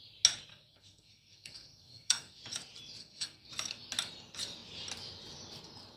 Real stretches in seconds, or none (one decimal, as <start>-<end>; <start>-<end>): 0.0-0.5; 2.4-3.0; 3.5-6.0